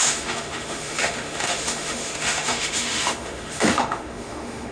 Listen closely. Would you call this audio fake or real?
fake